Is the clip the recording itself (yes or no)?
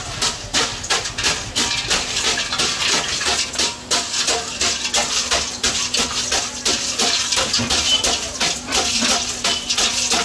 yes